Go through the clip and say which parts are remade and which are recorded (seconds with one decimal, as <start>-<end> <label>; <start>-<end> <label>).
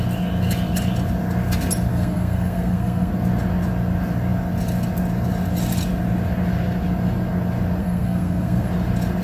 0.0-1.9 recorded; 1.9-3.1 remade; 3.1-7.8 recorded; 7.8-8.7 remade; 8.7-9.2 recorded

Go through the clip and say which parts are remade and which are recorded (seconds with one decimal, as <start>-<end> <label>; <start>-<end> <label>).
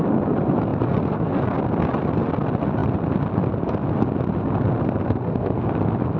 0.0-4.8 recorded; 4.8-5.7 remade; 5.7-6.2 recorded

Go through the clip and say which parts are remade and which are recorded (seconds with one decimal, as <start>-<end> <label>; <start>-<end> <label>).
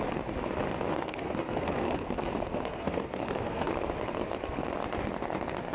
0.0-0.9 recorded; 0.9-3.7 remade; 3.7-5.7 recorded